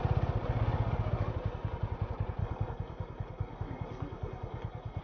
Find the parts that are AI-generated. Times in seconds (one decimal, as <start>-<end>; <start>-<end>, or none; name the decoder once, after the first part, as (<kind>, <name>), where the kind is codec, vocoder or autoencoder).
2.4-5.0 (codec, DAC)